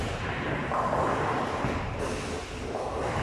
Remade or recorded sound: recorded